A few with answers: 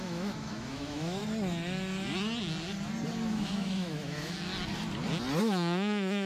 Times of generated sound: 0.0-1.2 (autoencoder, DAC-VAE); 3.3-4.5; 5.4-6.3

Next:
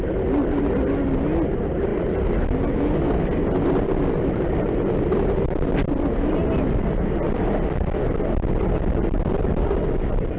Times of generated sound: none

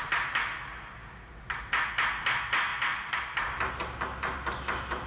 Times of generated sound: 2.7-3.7 (vocoder, BigVGAN v2)